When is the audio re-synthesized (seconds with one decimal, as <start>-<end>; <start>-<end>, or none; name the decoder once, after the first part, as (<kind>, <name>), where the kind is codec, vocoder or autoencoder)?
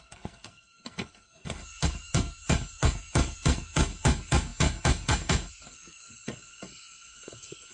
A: 0.0-7.7 (codec, SNAC)